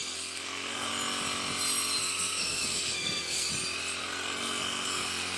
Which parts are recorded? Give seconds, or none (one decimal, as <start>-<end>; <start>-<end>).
0.9-2.0; 3.5-4.0